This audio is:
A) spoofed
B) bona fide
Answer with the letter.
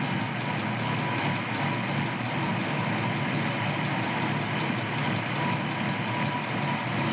B